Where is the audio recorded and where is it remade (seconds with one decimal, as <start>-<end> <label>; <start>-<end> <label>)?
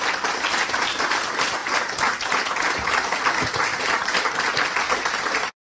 0.0-5.7 recorded